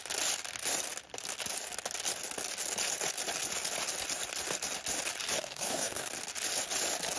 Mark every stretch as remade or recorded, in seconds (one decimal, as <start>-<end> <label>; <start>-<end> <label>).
0.0-5.4 recorded; 5.4-6.1 remade; 6.1-7.2 recorded